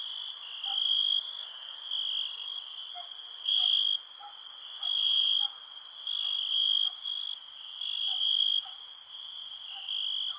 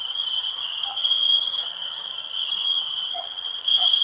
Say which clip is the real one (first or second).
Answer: first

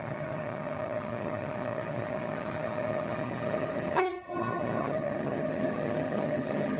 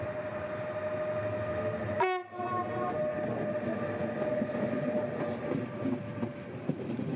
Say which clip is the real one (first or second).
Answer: second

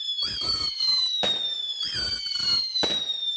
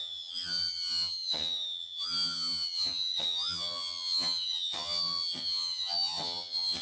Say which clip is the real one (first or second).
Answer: first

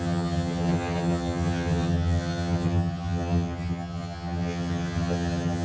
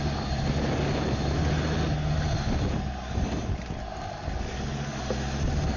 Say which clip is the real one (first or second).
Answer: second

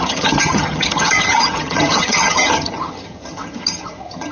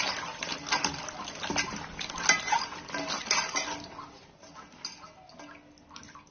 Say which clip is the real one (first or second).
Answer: second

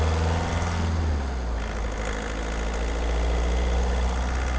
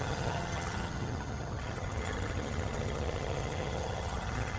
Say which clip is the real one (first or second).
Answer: first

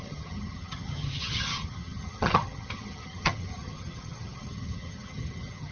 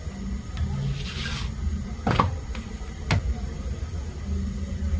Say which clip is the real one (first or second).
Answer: second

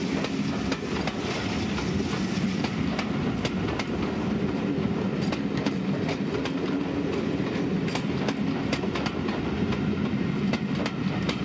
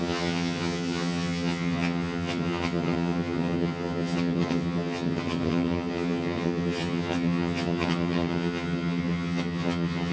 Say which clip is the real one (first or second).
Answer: first